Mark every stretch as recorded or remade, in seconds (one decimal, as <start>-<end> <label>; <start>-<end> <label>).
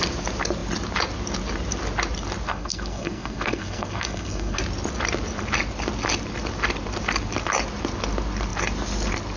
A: 0.0-2.5 recorded; 2.5-4.6 remade; 4.6-9.4 recorded